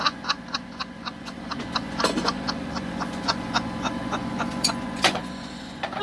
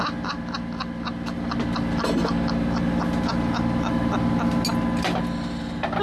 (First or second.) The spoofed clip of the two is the first